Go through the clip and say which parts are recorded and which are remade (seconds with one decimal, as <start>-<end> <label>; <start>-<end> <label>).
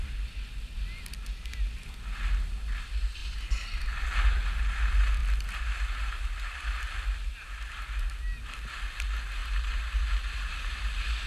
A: 0.0-3.2 recorded; 3.2-3.8 remade; 3.8-11.3 recorded